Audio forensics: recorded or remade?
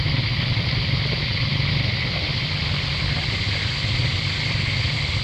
recorded